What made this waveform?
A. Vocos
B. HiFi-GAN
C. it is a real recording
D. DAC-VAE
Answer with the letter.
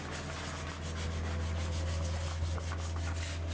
C